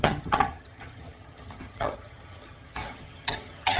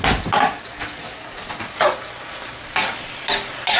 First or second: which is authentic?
second